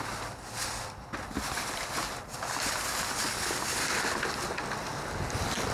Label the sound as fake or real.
real